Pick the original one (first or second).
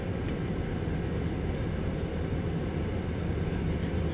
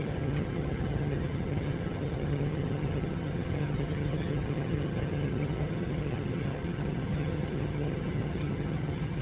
first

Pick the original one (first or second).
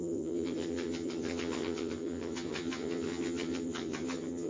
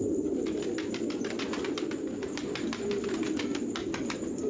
second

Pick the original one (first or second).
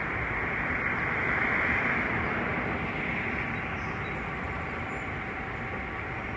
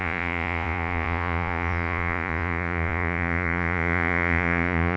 first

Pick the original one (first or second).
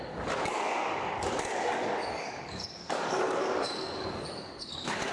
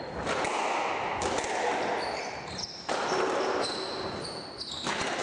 second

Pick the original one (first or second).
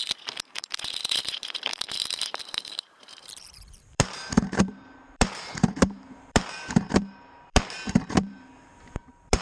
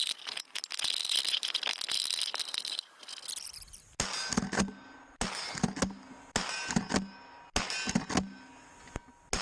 second